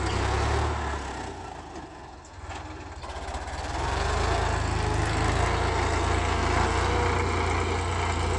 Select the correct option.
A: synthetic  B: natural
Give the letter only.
B